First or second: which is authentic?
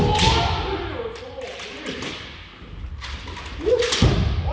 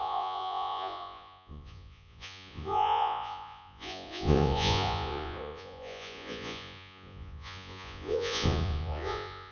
first